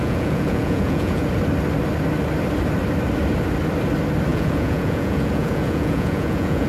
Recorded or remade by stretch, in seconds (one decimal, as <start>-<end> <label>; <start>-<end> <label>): 0.0-1.3 remade; 1.3-4.3 recorded; 4.3-6.7 remade